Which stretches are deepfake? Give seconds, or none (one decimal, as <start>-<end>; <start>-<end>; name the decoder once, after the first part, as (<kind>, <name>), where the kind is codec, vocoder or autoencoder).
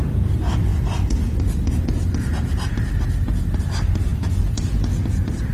none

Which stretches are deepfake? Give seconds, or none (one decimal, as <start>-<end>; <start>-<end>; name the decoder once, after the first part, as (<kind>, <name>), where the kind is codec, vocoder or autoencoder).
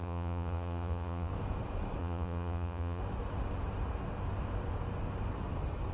0.0-1.3 (vocoder, Vocos); 2.0-3.0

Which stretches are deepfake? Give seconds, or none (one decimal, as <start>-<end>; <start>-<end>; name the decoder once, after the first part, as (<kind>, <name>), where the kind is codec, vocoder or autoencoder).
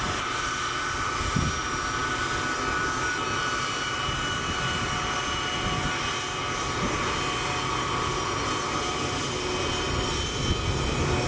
none